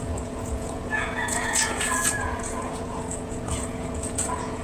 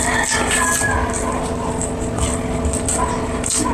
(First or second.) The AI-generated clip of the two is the first